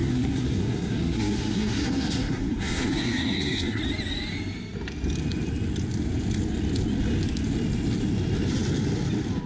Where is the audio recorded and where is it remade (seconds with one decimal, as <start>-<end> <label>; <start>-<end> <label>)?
0.0-3.8 remade; 3.8-9.5 recorded

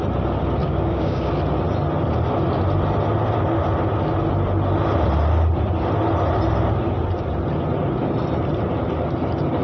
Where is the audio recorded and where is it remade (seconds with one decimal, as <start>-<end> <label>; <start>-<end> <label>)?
0.0-0.6 recorded; 0.6-1.3 remade; 1.3-9.6 recorded